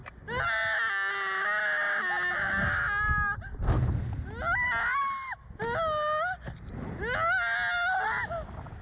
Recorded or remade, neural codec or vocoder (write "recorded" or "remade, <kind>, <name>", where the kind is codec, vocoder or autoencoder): recorded